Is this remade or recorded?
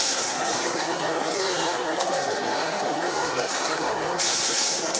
remade